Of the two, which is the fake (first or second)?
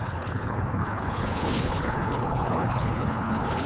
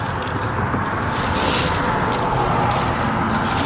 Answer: first